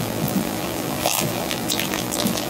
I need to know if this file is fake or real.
fake